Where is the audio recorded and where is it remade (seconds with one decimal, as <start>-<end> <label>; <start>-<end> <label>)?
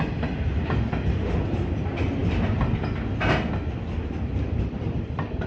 0.0-5.5 recorded